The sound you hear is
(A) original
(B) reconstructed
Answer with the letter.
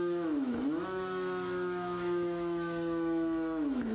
B